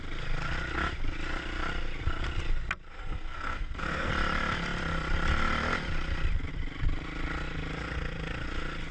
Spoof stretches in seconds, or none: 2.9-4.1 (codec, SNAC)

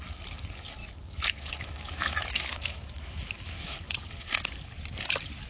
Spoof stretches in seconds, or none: 0.8-3.9 (autoencoder, DAC-VAE)

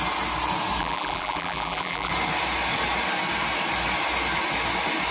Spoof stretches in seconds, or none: 0.8-2.1 (vocoder, BigVGAN v2)